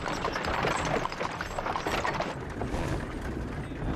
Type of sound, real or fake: real